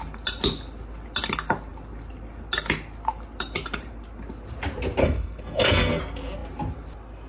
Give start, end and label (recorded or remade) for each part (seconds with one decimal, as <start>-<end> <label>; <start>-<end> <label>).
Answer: 0.0-5.0 recorded; 5.0-6.0 remade; 6.0-7.3 recorded